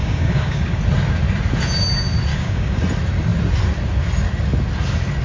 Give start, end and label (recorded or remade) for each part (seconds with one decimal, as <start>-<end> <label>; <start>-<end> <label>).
0.0-0.8 remade; 0.8-2.3 recorded; 2.3-2.8 remade; 2.8-5.2 recorded